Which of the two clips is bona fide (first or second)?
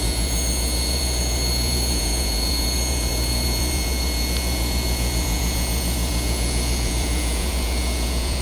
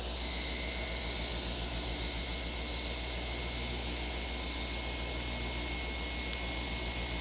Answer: second